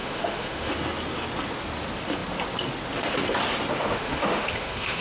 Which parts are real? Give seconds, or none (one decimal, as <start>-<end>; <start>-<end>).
0.7-3.7